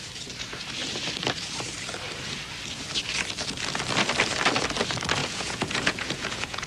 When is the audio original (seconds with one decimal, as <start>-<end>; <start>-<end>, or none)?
0.0-5.2